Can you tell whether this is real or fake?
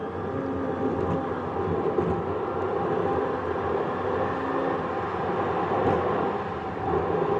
real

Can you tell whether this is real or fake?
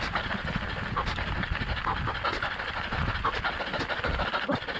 real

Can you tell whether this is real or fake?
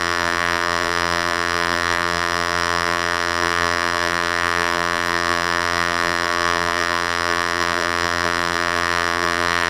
fake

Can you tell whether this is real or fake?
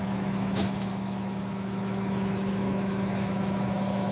fake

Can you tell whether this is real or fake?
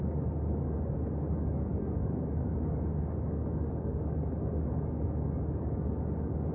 fake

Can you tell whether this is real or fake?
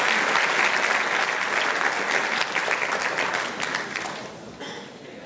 real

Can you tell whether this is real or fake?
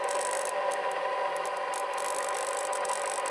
real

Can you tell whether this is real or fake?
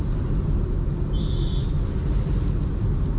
real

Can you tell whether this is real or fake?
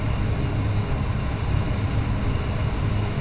real